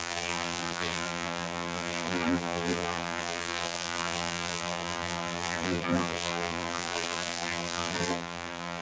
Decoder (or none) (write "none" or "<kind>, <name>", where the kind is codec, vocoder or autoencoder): vocoder, BigVGAN v2